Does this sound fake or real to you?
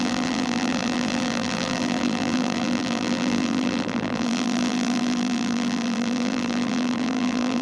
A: fake